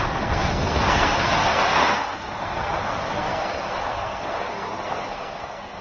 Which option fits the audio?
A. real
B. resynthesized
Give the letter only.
B